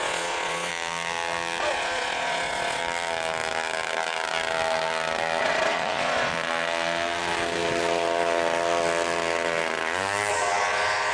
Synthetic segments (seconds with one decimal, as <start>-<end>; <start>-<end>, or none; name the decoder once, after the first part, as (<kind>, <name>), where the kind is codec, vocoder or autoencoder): 0.0-0.7 (vocoder, Vocos); 1.6-2.8; 5.4-6.3; 10.3-11.1